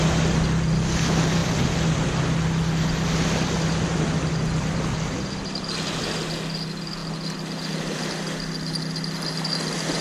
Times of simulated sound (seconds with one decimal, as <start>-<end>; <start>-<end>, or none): none